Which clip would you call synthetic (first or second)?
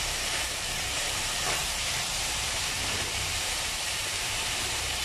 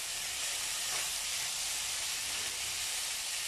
first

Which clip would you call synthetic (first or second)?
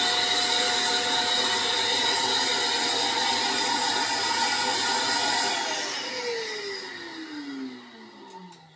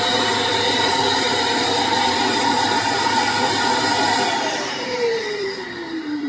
second